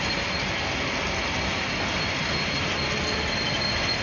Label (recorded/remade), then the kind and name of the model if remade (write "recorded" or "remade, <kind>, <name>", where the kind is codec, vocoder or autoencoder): remade, vocoder, BigVGAN v2